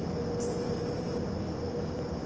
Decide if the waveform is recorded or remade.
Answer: recorded